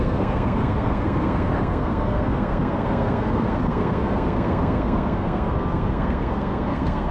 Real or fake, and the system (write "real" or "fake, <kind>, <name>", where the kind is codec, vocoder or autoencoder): fake, codec, SNAC